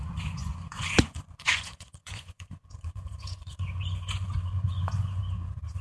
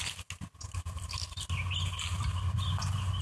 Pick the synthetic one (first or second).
first